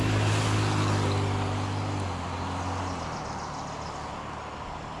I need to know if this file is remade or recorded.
recorded